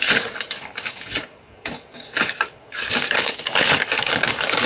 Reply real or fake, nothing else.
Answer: fake